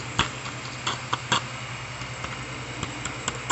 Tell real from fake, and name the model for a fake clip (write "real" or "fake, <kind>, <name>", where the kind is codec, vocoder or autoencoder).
real